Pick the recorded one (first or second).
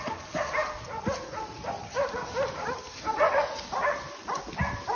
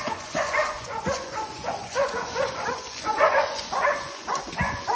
first